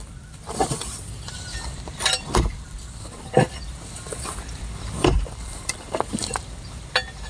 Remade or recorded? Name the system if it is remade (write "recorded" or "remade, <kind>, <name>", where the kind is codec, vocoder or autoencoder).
remade, vocoder, BigVGAN v2